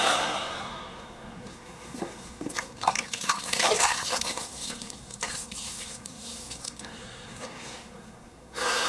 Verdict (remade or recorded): remade